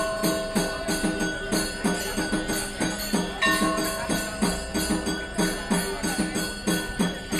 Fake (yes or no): no